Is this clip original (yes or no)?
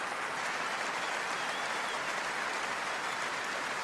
yes